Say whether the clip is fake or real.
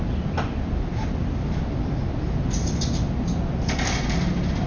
real